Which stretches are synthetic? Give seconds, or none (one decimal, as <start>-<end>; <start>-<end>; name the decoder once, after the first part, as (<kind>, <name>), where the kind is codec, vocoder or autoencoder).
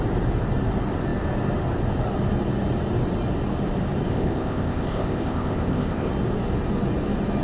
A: 4.1-6.1 (codec, ZipCodec)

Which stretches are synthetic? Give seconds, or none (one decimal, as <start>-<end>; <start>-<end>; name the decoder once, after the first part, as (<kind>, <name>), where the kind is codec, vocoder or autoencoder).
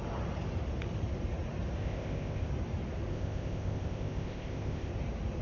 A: 1.8-2.5 (codec, ZipCodec); 3.1-4.9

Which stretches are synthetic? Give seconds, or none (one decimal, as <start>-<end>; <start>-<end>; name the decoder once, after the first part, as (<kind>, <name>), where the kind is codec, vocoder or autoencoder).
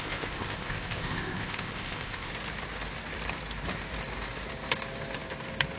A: 0.0-2.3 (codec, ZipCodec)